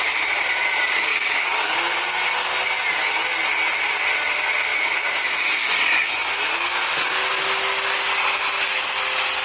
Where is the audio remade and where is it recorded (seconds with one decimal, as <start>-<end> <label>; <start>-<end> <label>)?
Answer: 0.0-1.1 recorded; 1.1-1.8 remade; 1.8-9.4 recorded